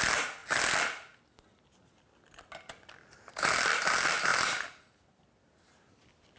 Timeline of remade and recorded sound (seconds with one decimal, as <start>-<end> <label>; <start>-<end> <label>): 0.0-6.4 recorded